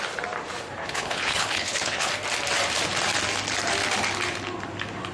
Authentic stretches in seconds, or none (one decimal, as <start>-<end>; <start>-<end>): 0.0-0.8; 2.1-5.1